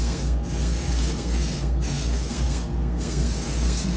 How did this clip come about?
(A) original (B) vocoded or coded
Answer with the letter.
B